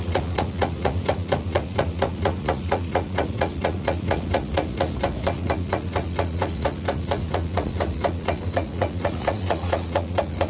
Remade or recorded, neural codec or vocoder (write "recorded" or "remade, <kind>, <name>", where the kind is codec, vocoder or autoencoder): remade, vocoder, Vocos